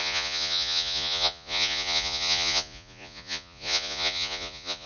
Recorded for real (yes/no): no